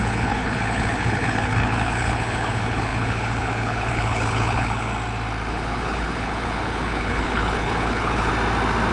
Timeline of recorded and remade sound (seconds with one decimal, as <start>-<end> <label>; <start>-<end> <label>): 0.0-4.9 remade; 4.9-5.5 recorded; 5.5-8.3 remade; 8.3-8.9 recorded